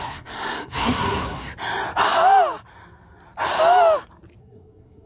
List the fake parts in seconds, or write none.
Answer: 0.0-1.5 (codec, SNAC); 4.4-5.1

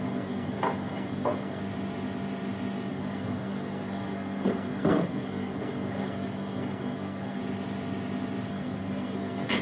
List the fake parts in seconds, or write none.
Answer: 0.0-1.6 (codec, SNAC); 2.9-7.4; 8.5-9.6

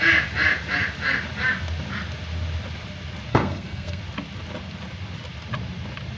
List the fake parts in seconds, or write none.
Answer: 3.3-4.0 (codec, SNAC)

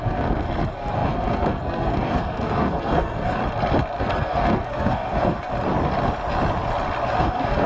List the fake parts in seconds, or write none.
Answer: 0.0-3.4 (codec, SNAC); 4.0-5.5; 7.2-7.7

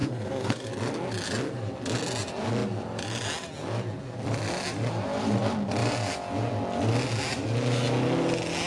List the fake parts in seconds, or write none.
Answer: 0.0-0.7 (codec, SNAC)